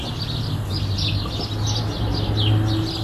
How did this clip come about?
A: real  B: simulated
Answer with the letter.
A